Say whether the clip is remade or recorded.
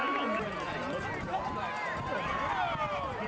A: recorded